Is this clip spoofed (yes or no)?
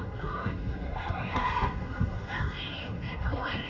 yes